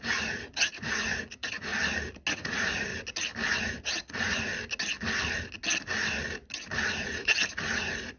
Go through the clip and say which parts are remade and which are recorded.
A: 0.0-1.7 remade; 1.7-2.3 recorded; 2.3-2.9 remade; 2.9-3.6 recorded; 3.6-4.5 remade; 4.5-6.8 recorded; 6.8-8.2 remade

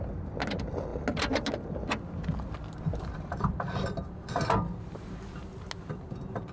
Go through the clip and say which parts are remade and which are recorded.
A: 0.0-6.5 recorded